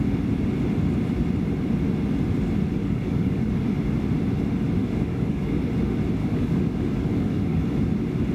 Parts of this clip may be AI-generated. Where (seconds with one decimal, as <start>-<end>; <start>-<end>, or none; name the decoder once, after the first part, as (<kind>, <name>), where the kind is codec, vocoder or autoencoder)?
2.8-3.5 (codec, DAC); 4.8-5.6; 6.2-7.6